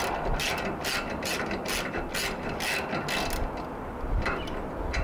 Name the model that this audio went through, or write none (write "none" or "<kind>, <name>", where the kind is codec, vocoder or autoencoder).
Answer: none